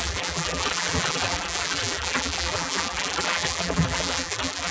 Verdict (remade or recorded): remade